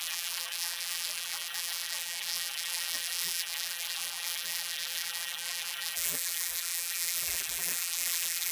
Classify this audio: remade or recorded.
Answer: remade